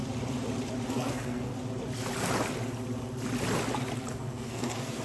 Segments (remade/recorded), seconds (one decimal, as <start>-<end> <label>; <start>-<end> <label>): 0.0-0.9 recorded; 0.9-1.5 remade; 1.5-4.1 recorded; 4.1-5.0 remade